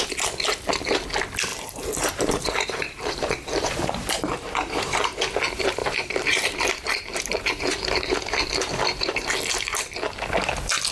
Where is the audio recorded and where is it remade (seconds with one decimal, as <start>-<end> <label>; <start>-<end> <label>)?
0.0-1.5 recorded; 1.5-5.2 remade; 5.2-5.8 recorded; 5.8-9.3 remade; 9.3-10.9 recorded